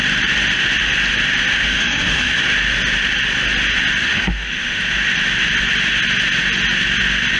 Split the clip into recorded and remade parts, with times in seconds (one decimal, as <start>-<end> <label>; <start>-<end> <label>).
0.0-1.5 recorded; 1.5-2.4 remade; 2.4-4.0 recorded; 4.0-4.8 remade; 4.8-7.4 recorded